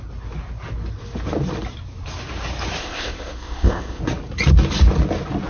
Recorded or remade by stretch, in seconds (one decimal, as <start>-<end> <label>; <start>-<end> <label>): 0.0-2.8 recorded; 2.8-4.0 remade; 4.0-5.5 recorded